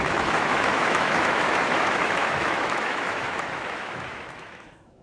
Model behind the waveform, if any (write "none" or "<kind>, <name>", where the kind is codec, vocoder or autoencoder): autoencoder, DAC-VAE